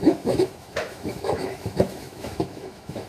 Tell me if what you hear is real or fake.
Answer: fake